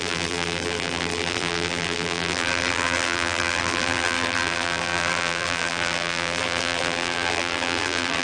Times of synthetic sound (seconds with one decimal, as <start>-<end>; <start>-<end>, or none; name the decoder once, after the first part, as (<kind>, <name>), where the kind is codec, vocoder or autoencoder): 0.0-8.2 (vocoder, BigVGAN v2)